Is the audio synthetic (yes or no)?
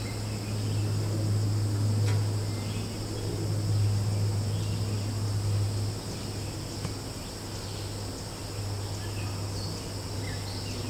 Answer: no